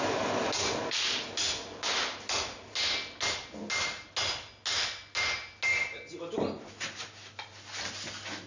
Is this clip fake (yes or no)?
no